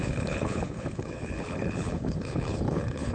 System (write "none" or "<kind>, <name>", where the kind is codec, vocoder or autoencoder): codec, HILCodec